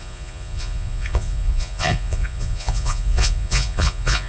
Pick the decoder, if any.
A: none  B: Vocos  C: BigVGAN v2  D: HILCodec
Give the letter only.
B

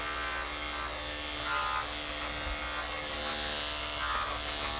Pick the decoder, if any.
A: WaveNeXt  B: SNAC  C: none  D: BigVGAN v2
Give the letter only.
C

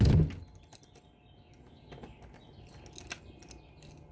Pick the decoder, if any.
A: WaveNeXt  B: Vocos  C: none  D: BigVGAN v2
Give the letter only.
C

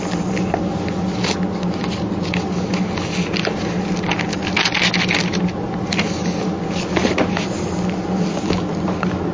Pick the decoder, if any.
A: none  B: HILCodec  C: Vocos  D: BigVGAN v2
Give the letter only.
A